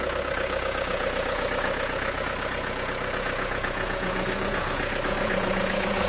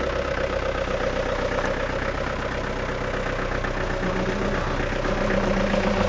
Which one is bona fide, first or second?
second